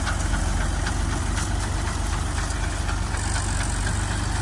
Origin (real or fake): real